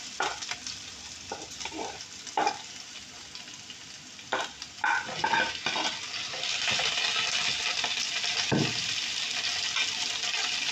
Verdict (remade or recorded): recorded